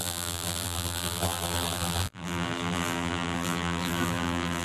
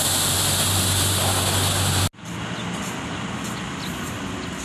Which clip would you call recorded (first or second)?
second